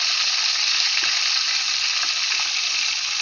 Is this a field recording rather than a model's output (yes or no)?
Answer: yes